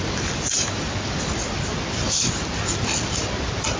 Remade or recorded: recorded